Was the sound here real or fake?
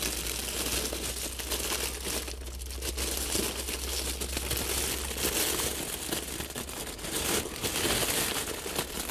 real